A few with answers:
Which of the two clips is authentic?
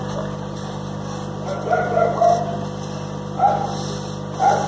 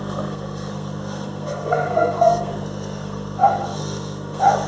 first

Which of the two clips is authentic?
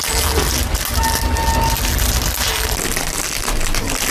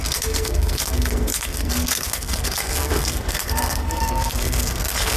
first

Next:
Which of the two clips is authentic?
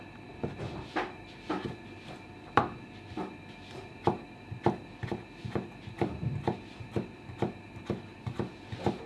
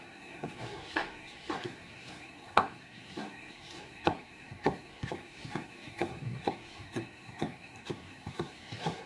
first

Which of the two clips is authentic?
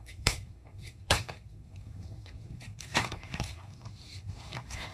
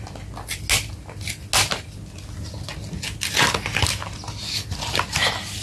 second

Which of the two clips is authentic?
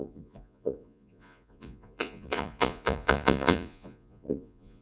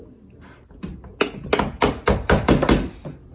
second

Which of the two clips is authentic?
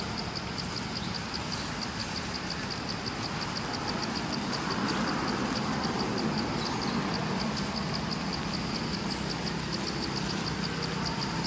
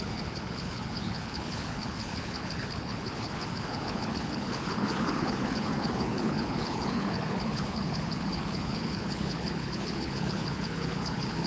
first